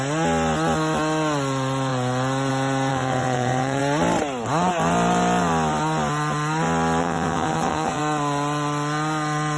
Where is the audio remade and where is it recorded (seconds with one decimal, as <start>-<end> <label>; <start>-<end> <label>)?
0.0-2.9 recorded; 2.9-3.8 remade; 3.8-7.0 recorded; 7.0-8.0 remade; 8.0-9.6 recorded